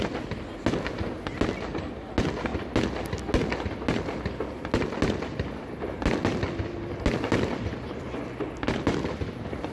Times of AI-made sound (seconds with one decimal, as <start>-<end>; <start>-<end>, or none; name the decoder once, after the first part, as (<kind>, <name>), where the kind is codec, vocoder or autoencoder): none